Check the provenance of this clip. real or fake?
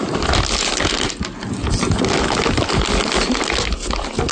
real